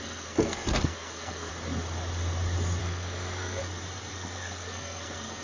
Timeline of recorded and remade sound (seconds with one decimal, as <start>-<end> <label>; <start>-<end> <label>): 0.0-1.5 remade; 1.5-2.8 recorded; 2.8-3.6 remade; 3.6-4.1 recorded; 4.1-5.4 remade